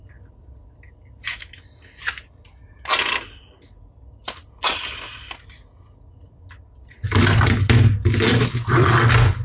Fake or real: real